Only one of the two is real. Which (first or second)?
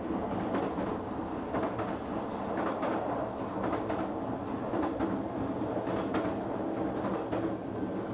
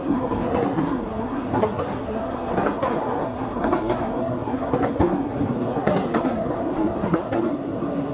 first